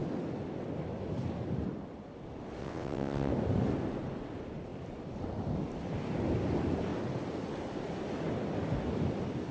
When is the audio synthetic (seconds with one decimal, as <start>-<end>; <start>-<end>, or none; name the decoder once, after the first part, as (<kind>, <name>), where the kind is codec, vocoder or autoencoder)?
2.6-3.3 (vocoder, WaveNeXt)